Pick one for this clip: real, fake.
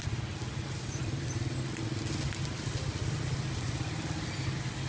real